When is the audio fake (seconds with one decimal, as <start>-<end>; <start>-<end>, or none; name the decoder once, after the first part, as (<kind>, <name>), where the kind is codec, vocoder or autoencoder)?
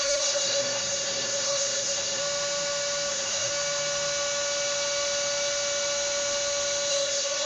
0.0-2.2 (codec, SNAC); 3.1-3.5; 6.9-7.5